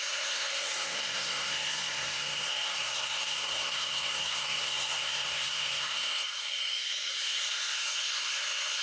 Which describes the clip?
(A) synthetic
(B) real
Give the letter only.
A